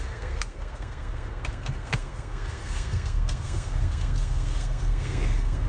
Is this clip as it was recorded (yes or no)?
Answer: no